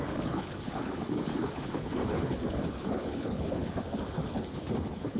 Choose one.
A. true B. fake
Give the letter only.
B